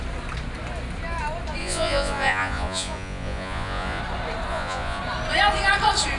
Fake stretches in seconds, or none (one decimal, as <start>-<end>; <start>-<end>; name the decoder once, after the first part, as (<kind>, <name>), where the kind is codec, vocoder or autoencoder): 1.6-4.0 (vocoder, Vocos); 4.5-5.0